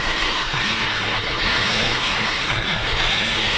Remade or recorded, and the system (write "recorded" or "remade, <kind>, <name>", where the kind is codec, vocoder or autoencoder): remade, codec, SNAC